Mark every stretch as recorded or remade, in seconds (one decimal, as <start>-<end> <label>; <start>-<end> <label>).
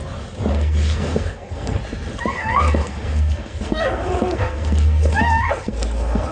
0.0-0.5 recorded; 0.5-1.8 remade; 1.8-2.3 recorded; 2.3-6.3 remade